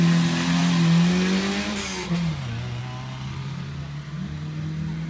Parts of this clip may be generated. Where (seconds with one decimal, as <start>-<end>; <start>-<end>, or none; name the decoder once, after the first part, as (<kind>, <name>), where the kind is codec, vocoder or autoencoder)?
none